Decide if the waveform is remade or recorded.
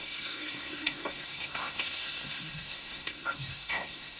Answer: remade